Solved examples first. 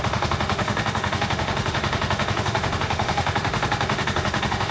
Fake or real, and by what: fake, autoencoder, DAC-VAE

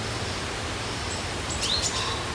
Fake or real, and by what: real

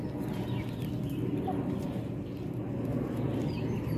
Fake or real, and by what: real